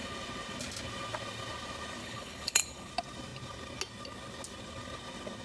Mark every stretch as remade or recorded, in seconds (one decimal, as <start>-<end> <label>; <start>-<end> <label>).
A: 0.0-2.0 recorded; 2.0-2.9 remade; 2.9-5.4 recorded